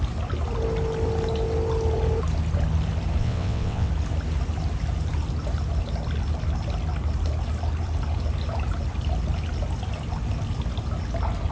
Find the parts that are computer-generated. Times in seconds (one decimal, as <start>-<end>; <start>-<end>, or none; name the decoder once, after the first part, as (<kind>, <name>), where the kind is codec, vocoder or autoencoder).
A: 3.2-3.9 (vocoder, WaveNeXt)